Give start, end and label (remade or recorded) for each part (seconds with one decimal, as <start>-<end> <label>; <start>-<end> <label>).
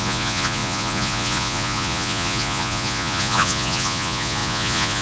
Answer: 0.0-5.0 remade